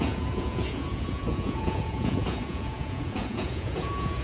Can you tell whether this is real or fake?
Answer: fake